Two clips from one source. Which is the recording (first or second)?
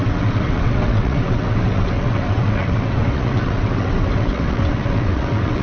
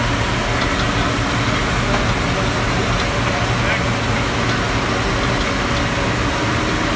second